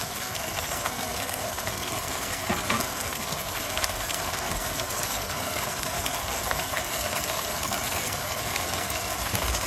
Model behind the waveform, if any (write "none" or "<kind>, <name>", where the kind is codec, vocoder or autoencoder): codec, SNAC